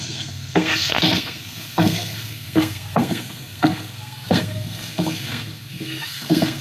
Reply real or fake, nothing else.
fake